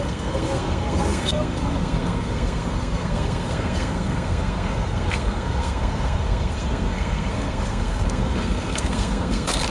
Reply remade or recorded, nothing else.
remade